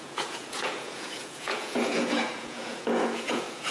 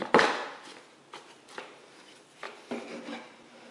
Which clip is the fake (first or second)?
first